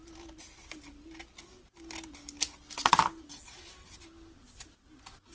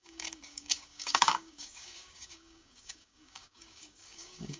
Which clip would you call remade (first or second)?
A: second